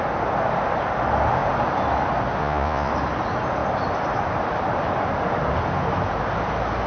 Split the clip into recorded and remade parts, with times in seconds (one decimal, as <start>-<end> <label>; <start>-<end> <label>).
0.0-2.4 recorded; 2.4-2.9 remade; 2.9-6.9 recorded